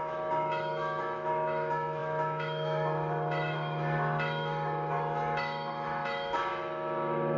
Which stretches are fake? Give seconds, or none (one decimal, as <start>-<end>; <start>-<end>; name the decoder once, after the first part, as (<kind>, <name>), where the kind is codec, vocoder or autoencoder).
0.0-7.4 (autoencoder, DAC-VAE)